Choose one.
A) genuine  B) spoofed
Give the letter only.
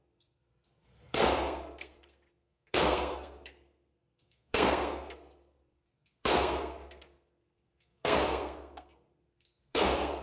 B